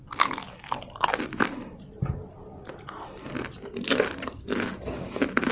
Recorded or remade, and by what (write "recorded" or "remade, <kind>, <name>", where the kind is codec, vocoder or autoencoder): recorded